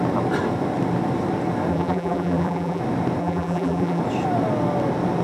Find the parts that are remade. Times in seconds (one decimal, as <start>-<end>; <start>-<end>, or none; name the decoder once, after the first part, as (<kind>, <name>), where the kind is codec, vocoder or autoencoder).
1.7-2.8 (vocoder, BigVGAN v2); 3.2-4.0